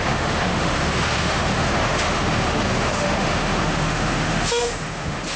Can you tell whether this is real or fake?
fake